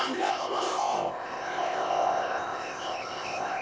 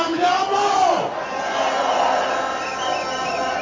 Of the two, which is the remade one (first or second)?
first